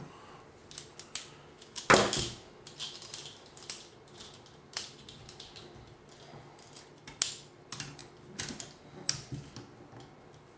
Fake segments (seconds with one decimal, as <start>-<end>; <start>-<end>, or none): none